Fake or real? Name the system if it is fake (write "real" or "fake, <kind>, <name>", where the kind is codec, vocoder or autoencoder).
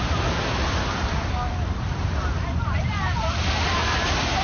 real